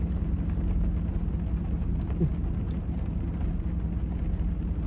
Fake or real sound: real